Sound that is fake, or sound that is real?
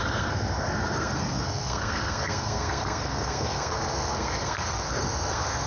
fake